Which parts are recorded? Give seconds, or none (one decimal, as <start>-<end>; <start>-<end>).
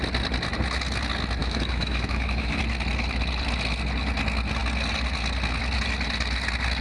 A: 0.0-1.4; 2.6-6.8